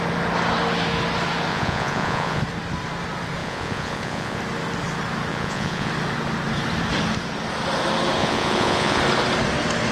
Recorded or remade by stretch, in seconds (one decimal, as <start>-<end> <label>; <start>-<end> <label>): 0.0-1.5 recorded; 1.5-2.4 remade; 2.4-3.4 recorded; 3.4-4.4 remade; 4.4-5.3 recorded; 5.3-5.9 remade; 5.9-8.2 recorded; 8.2-9.0 remade; 9.0-9.9 recorded